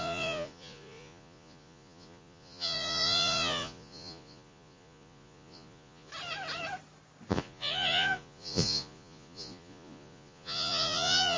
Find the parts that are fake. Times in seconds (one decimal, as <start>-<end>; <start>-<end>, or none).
0.0-6.1; 7.3-11.4